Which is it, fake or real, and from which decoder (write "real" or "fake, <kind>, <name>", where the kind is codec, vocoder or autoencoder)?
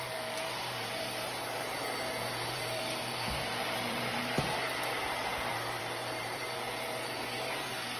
fake, vocoder, BigVGAN v2